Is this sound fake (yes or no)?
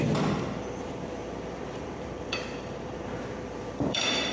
yes